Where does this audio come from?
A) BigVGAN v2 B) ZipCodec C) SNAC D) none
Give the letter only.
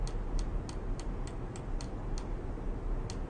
D